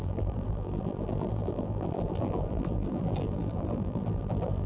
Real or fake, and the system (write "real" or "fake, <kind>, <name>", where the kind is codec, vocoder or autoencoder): fake, vocoder, BigVGAN v2